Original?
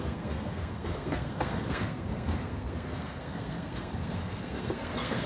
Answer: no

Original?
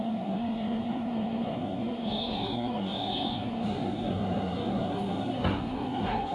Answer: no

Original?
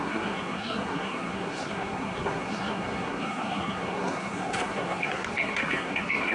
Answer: no